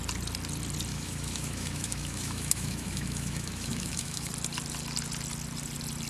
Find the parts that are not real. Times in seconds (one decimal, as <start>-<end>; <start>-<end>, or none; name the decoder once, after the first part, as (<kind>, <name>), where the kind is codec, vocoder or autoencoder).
0.9-4.3 (autoencoder, DAC-VAE)